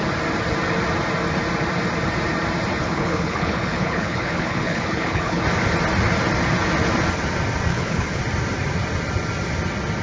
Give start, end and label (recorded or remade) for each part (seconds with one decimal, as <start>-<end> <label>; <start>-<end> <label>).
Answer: 0.0-2.8 recorded; 2.8-5.4 remade; 5.4-7.7 recorded; 7.7-8.2 remade; 8.2-10.0 recorded